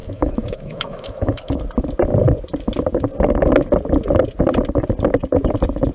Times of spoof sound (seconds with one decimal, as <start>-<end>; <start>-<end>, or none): 0.0-1.6